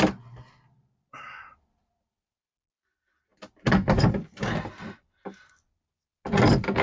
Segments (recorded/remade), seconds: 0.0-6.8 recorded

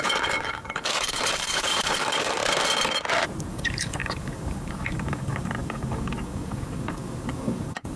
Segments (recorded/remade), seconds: 0.0-2.4 remade; 2.4-3.5 recorded; 3.5-8.0 remade

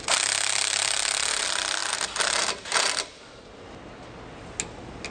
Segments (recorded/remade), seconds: 0.0-5.1 recorded

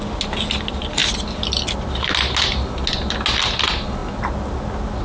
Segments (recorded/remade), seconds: 0.0-5.0 recorded